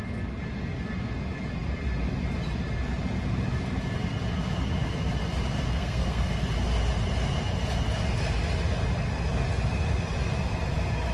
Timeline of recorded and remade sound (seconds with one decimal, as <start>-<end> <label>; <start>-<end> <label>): 0.0-5.7 recorded; 5.7-6.4 remade; 6.4-11.1 recorded